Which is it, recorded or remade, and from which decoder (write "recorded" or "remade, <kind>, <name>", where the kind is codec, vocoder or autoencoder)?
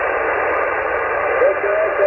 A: recorded